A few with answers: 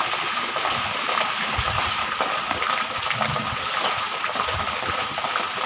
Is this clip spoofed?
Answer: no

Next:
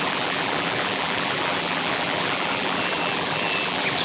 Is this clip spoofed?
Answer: yes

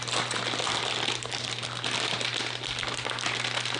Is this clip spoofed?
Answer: yes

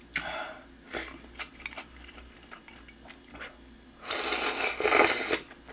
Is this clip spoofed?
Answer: no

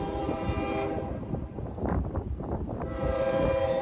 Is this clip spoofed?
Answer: yes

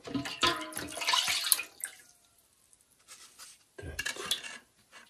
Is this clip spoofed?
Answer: no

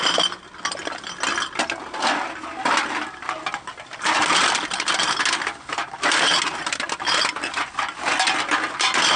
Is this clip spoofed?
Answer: no